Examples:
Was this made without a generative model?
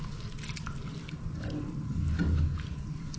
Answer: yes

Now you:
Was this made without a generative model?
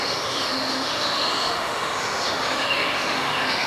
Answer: no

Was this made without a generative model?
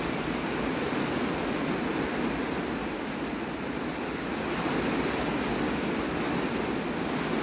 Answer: yes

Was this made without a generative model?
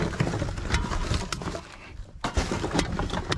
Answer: yes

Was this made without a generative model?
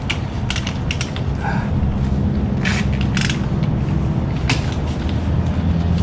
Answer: yes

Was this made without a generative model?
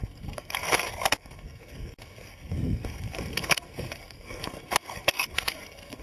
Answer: no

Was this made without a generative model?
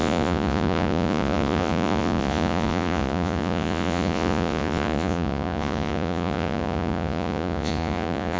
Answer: no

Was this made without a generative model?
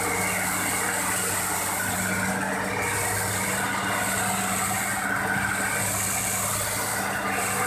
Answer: yes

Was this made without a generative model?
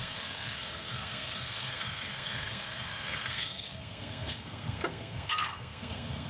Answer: no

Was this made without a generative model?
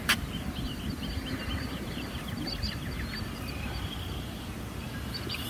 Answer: no